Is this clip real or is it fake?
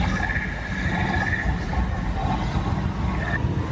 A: real